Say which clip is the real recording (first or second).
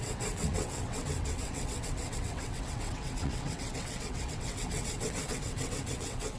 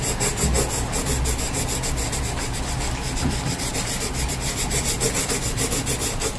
second